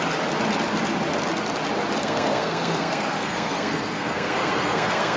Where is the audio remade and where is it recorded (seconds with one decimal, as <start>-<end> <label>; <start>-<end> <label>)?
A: 0.0-2.0 recorded; 2.0-5.2 remade